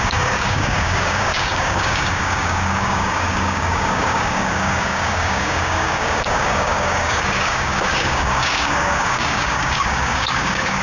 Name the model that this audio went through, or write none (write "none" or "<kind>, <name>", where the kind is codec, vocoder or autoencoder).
codec, DAC